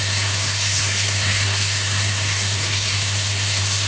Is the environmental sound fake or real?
fake